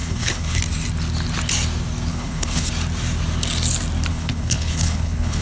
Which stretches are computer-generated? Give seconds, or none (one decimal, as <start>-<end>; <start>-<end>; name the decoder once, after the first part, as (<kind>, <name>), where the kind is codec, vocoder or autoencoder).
0.0-0.6 (codec, HILCodec); 2.1-2.7; 4.1-5.4